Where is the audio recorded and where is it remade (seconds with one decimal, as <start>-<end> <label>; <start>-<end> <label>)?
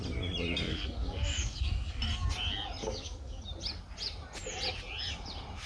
0.0-0.7 recorded; 0.7-2.0 remade; 2.0-2.8 recorded; 2.8-3.4 remade; 3.4-5.7 recorded